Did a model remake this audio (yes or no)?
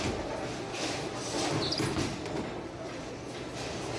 no